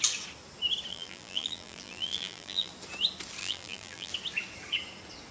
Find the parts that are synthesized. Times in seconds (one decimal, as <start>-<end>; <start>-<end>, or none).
0.9-2.7; 3.4-4.1